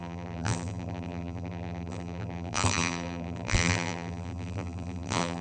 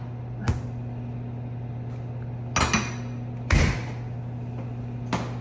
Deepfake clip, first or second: first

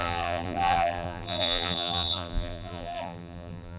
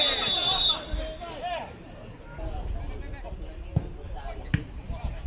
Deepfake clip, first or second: first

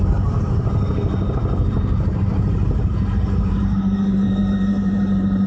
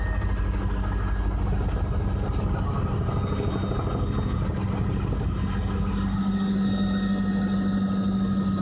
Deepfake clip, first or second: first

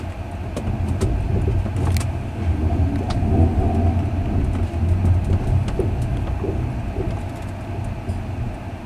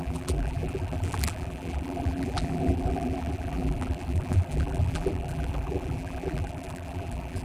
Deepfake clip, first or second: second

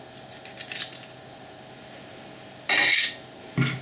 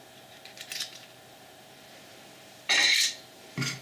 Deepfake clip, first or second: second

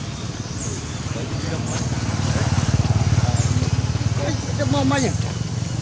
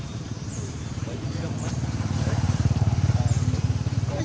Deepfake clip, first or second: second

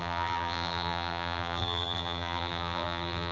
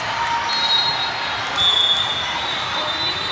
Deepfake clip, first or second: first